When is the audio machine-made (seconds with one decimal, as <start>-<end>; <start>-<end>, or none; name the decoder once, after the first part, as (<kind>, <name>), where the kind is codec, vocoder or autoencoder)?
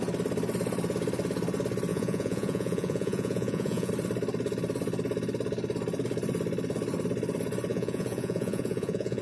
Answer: 1.9-3.9 (vocoder, Vocos); 7.7-9.2